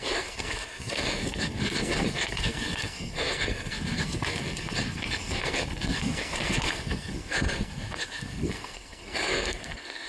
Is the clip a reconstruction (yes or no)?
yes